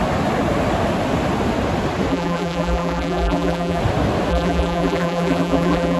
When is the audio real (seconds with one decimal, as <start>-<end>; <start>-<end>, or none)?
0.0-2.1; 3.8-4.3